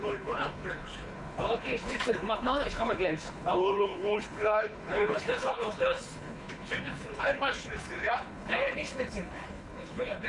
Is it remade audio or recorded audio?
remade